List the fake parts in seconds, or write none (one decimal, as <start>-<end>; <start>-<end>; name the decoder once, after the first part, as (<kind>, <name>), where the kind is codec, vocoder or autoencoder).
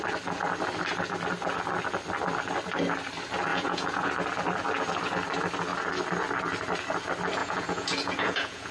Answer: 3.5-4.1 (vocoder, Vocos); 7.4-8.7